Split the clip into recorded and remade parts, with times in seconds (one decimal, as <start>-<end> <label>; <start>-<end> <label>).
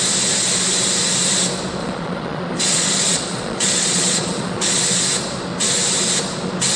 0.0-1.8 recorded; 1.8-4.8 remade; 4.8-6.8 recorded